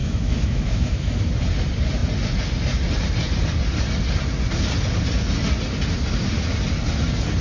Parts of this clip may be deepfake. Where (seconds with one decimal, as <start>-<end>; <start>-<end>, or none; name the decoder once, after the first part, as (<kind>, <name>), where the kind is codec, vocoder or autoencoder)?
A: 0.0-1.3 (autoencoder, DAC-VAE)